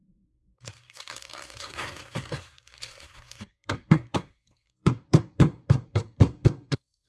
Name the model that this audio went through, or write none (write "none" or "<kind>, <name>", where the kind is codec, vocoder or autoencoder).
codec, SNAC